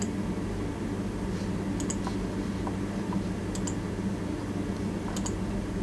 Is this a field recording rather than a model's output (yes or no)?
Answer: yes